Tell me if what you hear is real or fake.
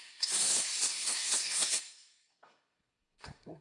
fake